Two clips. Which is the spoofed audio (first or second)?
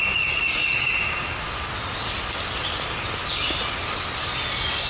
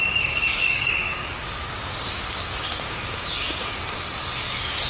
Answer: second